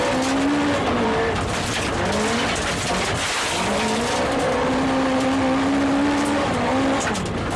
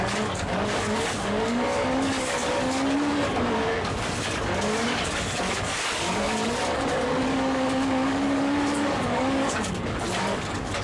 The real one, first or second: first